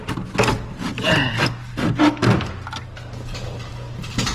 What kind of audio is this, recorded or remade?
recorded